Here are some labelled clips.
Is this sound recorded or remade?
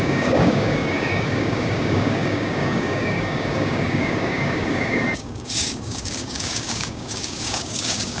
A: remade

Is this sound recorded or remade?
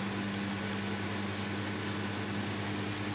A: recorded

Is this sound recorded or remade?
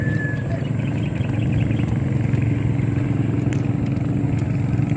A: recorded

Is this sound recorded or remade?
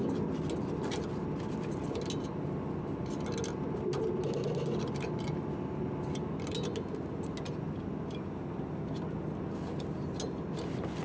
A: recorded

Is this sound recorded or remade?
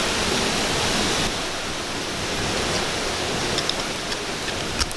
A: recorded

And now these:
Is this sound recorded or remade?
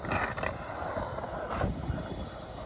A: recorded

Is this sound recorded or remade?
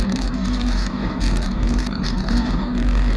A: remade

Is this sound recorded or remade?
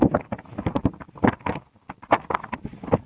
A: recorded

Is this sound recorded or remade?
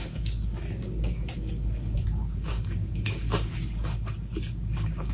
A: remade